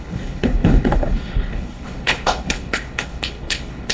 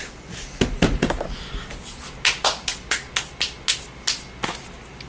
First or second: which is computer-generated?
first